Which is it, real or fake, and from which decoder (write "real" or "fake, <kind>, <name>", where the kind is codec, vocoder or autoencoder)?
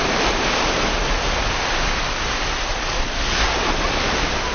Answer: real